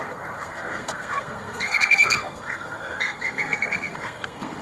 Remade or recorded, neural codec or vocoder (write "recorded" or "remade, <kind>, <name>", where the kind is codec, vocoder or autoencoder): remade, codec, SNAC